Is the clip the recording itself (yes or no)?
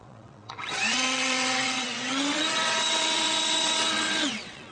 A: no